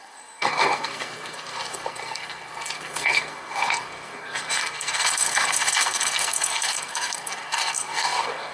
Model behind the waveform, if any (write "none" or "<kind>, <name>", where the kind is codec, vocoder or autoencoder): codec, SNAC